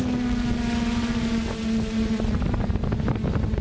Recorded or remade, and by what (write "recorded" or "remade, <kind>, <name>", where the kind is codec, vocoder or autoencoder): recorded